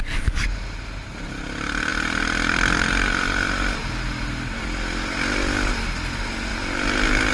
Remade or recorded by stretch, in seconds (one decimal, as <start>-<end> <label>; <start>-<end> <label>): 0.0-7.3 recorded